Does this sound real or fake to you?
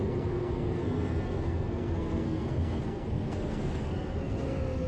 fake